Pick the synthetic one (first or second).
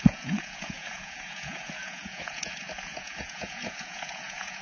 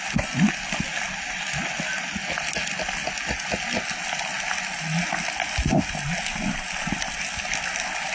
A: first